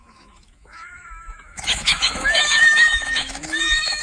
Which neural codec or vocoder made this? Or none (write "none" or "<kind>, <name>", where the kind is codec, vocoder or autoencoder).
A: autoencoder, DAC-VAE